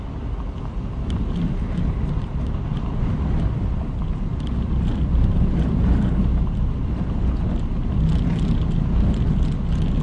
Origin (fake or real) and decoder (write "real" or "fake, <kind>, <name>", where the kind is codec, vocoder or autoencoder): real